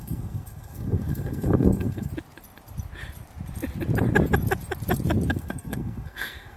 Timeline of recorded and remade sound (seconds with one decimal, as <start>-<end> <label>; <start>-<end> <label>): 0.0-2.1 remade; 2.1-5.3 recorded; 5.3-6.6 remade

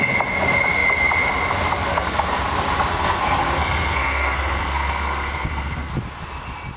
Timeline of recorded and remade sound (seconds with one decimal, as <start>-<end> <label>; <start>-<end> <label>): 0.0-1.9 recorded; 1.9-2.4 remade; 2.4-2.9 recorded; 2.9-5.9 remade; 5.9-6.8 recorded

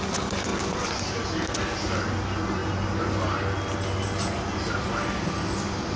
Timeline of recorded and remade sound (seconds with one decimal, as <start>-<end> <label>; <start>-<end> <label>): 0.0-2.6 recorded; 2.6-4.0 remade; 4.0-6.0 recorded

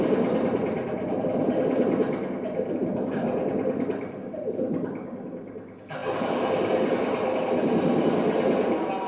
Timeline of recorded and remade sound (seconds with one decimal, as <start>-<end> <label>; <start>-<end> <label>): 0.0-9.1 recorded

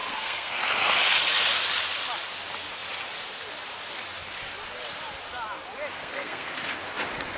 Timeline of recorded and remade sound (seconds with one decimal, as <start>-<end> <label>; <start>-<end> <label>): 0.0-0.6 remade; 0.6-5.9 recorded; 5.9-6.5 remade; 6.5-7.4 recorded

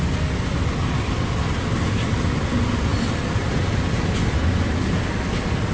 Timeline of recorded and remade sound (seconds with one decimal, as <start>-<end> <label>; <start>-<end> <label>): 0.0-5.7 recorded